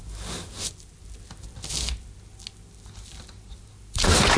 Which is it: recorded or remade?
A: recorded